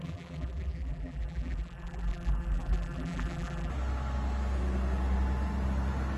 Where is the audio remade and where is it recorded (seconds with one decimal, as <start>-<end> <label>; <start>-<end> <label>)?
0.0-3.7 remade; 3.7-6.2 recorded